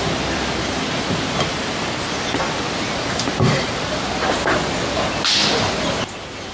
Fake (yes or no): no